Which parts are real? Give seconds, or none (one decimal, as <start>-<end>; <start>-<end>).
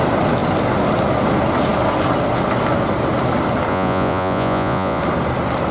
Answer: 0.0-3.7; 5.0-5.7